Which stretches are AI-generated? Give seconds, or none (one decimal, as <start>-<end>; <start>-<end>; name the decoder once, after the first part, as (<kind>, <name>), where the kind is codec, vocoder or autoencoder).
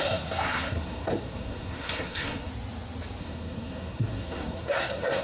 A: 0.0-2.5 (codec, SNAC); 3.2-5.2